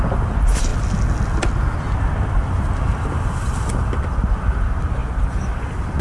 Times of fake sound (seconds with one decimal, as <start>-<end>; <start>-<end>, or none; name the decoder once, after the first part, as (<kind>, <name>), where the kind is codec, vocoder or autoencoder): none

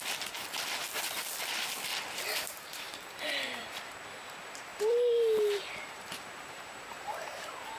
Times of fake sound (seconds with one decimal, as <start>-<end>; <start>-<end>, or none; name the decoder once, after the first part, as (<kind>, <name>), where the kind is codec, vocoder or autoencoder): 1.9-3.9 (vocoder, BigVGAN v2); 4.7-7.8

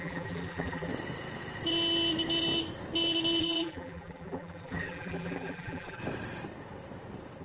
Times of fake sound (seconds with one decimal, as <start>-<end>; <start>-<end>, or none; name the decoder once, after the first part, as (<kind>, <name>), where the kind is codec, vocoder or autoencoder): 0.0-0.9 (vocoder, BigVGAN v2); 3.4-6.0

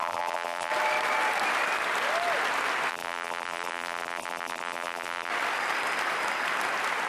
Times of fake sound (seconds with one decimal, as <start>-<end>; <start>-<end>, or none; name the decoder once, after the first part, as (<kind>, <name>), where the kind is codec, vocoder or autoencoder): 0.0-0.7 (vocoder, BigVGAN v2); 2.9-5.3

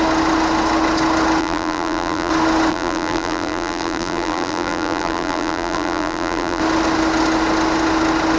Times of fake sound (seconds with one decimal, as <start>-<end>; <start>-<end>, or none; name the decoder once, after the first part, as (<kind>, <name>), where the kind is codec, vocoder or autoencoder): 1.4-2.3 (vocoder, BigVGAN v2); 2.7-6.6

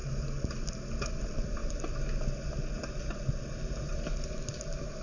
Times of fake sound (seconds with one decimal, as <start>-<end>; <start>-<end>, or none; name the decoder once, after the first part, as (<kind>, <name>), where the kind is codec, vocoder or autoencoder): 1.2-5.0 (vocoder, BigVGAN v2)